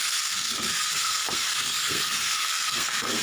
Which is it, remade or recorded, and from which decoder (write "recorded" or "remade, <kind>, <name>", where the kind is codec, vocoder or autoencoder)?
remade, codec, SNAC